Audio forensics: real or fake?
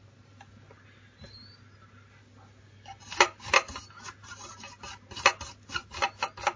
real